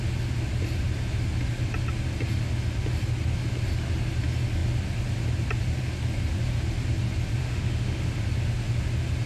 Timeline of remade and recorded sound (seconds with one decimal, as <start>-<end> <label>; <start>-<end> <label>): 0.0-7.4 recorded; 7.4-8.2 remade; 8.2-9.3 recorded